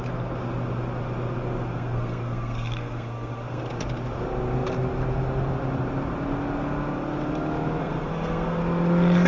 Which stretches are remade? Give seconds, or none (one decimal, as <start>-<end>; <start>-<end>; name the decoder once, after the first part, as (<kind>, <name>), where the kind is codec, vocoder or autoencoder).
1.7-3.6 (codec, SNAC); 7.8-8.6